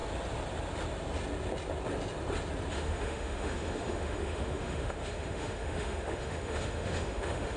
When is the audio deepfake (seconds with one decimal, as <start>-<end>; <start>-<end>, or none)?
2.7-7.6